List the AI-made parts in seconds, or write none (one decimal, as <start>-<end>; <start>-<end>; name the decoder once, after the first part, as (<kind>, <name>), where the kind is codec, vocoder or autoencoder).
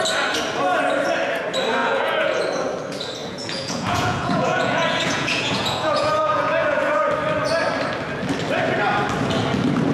1.8-2.4 (vocoder, Vocos); 3.2-7.0